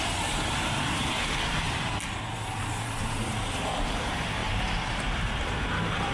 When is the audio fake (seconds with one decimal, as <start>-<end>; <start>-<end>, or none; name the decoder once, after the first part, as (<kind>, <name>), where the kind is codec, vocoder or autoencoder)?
0.0-1.9 (vocoder, BigVGAN v2); 2.5-4.4; 4.9-6.1